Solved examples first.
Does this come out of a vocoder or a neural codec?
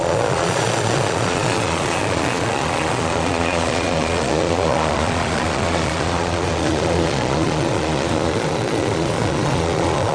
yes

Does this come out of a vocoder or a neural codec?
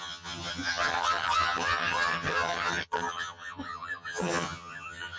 yes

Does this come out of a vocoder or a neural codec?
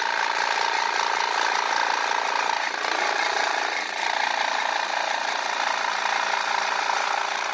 no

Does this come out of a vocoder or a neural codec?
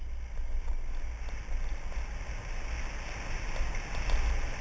no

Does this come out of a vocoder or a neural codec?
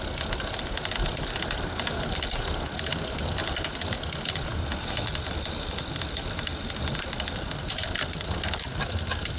no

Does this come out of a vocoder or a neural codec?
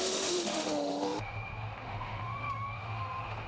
yes